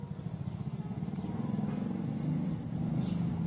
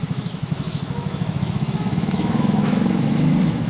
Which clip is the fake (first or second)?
second